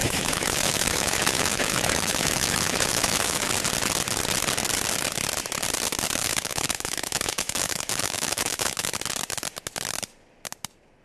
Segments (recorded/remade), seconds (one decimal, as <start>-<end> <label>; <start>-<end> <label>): 0.0-3.5 remade; 3.5-6.2 recorded; 6.2-8.9 remade; 8.9-11.0 recorded